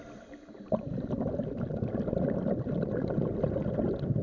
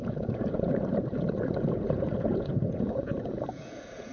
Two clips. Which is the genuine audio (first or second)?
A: first